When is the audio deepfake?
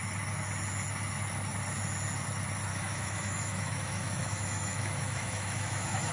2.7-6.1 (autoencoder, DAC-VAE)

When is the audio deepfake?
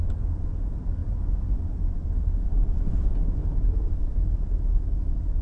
none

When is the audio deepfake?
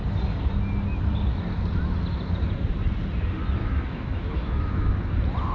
3.6-4.9 (autoencoder, DAC-VAE)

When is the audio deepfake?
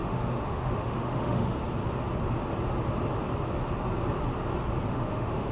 0.0-1.6 (autoencoder, DAC-VAE); 4.9-5.5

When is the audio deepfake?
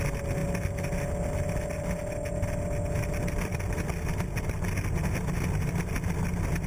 none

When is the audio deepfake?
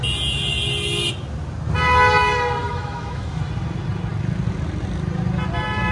2.6-3.4 (autoencoder, DAC-VAE)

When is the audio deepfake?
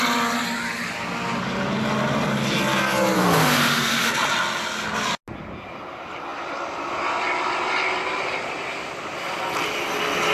3.2-4.1 (autoencoder, DAC-VAE)